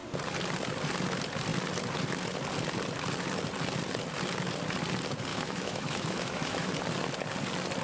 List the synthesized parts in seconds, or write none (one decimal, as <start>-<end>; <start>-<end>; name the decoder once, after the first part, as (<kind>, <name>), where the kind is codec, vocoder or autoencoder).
5.3-6.7 (autoencoder, DAC-VAE)